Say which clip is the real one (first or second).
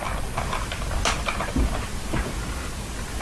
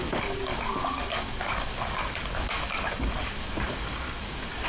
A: first